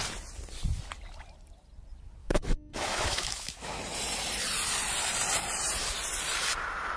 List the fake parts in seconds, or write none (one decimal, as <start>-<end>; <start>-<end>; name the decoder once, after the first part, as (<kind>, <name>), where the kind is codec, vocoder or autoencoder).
2.2-3.8 (autoencoder, DAC-VAE)